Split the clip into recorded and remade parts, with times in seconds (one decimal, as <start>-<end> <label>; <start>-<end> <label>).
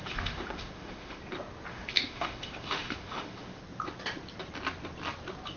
0.0-1.2 remade; 1.2-1.7 recorded; 1.7-3.6 remade; 3.6-5.6 recorded